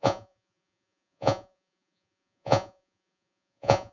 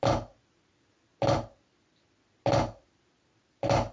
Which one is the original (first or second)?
second